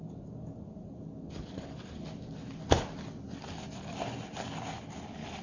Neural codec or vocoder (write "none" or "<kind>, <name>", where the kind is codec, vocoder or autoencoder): none